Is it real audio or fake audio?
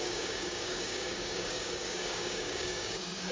fake